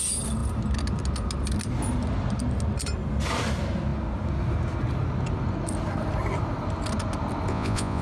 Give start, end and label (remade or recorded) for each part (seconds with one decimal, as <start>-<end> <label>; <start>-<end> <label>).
0.0-7.5 recorded; 7.5-8.0 remade